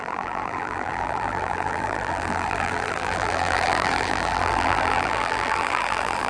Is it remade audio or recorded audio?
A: remade